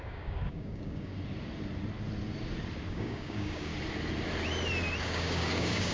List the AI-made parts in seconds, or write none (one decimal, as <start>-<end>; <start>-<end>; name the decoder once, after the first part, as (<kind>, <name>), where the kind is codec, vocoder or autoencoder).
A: 0.0-1.1 (codec, DAC); 2.9-3.7; 5.0-5.9